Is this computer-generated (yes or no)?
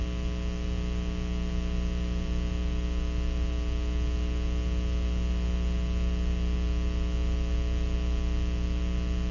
no